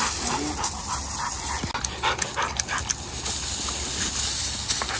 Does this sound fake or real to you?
real